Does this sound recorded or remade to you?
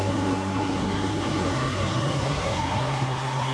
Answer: remade